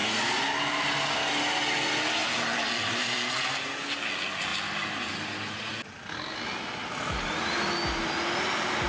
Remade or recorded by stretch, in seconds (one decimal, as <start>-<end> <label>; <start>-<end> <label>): 0.0-2.2 recorded; 2.2-3.4 remade; 3.4-8.9 recorded